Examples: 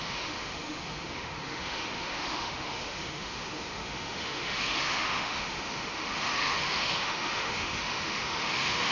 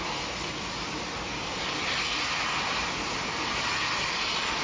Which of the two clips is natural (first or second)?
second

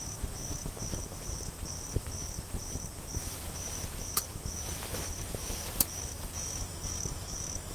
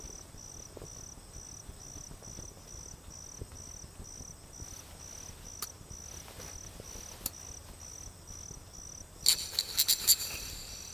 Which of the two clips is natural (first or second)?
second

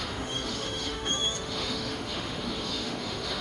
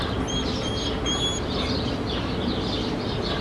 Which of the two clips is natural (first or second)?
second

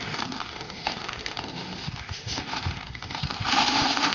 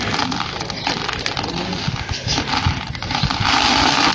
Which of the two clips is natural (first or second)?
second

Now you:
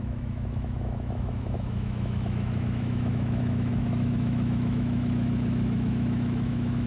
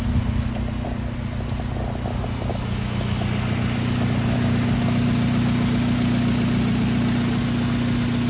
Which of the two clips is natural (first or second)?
second